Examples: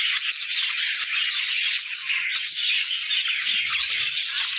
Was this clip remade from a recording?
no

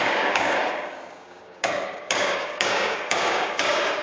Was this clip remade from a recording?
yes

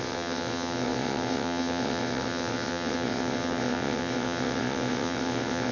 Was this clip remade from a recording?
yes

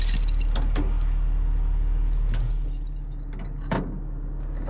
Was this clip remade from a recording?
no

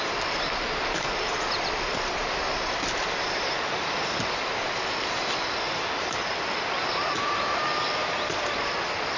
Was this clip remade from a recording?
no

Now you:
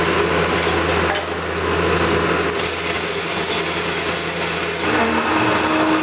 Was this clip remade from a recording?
no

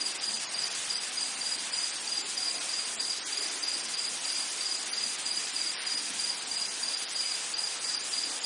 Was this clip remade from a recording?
yes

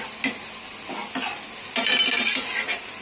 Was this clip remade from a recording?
no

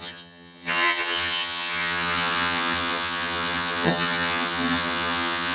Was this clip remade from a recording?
yes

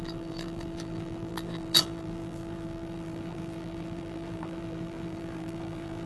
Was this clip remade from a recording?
yes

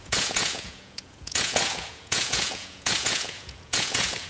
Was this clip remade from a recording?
yes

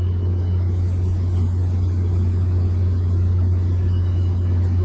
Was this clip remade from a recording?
yes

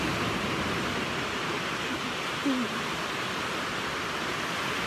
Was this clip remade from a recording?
no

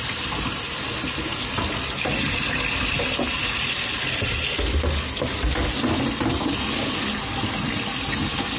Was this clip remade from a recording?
no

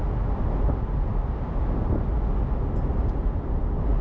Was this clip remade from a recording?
no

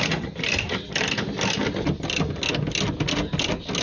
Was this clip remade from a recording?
no